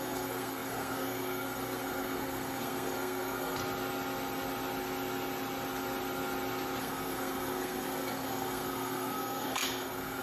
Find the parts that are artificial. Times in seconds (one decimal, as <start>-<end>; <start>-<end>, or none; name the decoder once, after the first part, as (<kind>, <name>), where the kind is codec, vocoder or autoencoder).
0.0-3.6 (codec, SNAC); 6.8-10.2